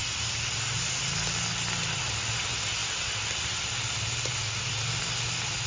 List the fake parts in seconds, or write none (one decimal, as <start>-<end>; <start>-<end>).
none